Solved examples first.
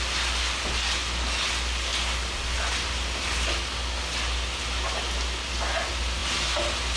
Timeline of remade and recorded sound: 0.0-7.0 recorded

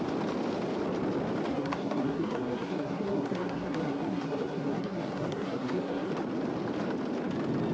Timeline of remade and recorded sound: 0.0-1.5 recorded; 1.5-6.1 remade; 6.1-7.7 recorded

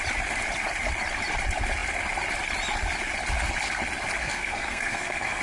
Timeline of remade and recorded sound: 0.0-4.2 recorded; 4.2-5.4 remade

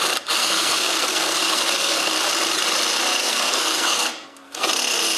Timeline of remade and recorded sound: 0.0-0.4 recorded; 0.4-2.1 remade; 2.1-3.2 recorded; 3.2-4.7 remade; 4.7-5.2 recorded

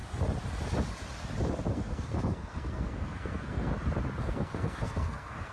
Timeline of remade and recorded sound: 0.0-1.7 recorded; 1.7-3.7 remade; 3.7-4.2 recorded; 4.2-5.5 remade

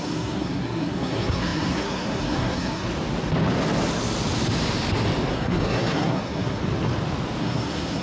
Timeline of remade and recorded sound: 0.0-2.9 remade; 2.9-5.3 recorded; 5.3-6.6 remade; 6.6-7.4 recorded; 7.4-8.0 remade

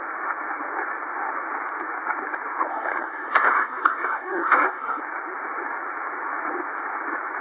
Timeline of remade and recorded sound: 0.0-2.7 recorded; 2.7-5.0 remade; 5.0-7.4 recorded

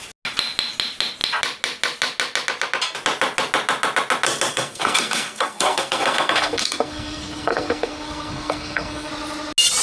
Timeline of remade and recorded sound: 0.0-4.5 recorded; 4.5-9.1 remade; 9.1-9.8 recorded